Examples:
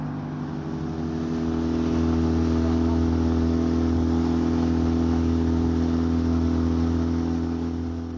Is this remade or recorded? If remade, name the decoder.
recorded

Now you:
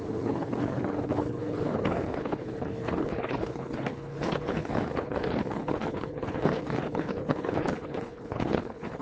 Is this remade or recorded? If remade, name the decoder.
remade, codec, HILCodec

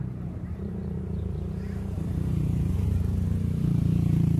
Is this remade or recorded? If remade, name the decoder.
remade, vocoder, BigVGAN v2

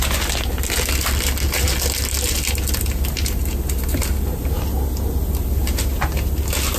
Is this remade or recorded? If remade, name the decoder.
recorded